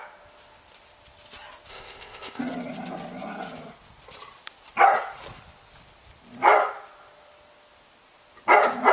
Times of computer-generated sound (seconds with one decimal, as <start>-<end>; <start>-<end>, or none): 1.7-2.4